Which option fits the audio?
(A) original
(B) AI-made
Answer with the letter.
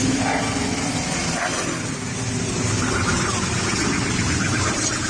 A